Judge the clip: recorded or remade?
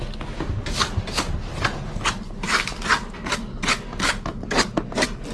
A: recorded